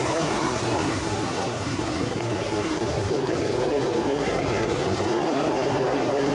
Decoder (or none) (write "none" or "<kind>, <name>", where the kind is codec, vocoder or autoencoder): codec, SNAC